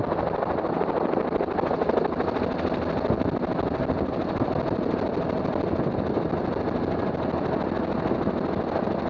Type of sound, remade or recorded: recorded